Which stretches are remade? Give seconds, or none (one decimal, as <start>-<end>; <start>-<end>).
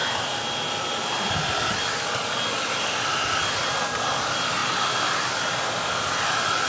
none